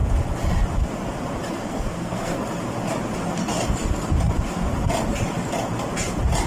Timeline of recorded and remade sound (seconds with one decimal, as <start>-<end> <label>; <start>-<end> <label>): 0.0-1.5 recorded; 1.5-2.4 remade; 2.4-6.5 recorded